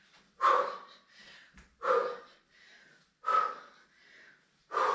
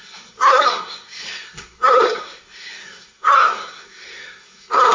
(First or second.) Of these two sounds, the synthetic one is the second